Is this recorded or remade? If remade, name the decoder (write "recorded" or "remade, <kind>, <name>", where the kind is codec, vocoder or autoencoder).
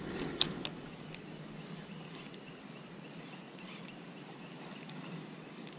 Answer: recorded